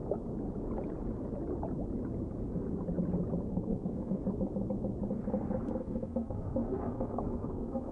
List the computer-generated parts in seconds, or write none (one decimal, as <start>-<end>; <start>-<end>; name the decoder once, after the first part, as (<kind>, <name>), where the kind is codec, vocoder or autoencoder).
3.5-4.2 (codec, SNAC); 5.8-7.9